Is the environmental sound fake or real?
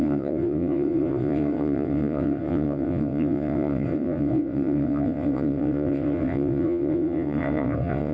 fake